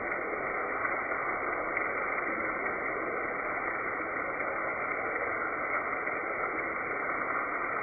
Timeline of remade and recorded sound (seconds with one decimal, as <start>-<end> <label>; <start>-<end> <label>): 0.0-7.8 recorded